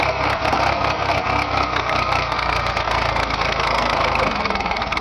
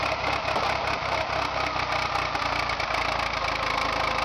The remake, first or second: first